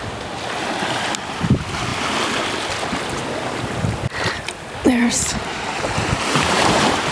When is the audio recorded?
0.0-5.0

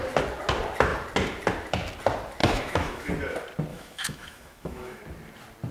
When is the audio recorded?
0.0-2.4; 3.1-3.7; 5.0-5.7

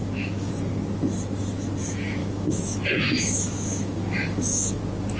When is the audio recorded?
0.5-2.2; 4.8-5.2